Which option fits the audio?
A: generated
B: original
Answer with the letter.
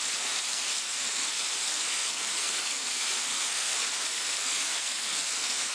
A